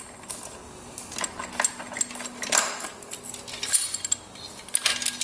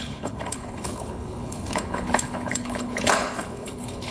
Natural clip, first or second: first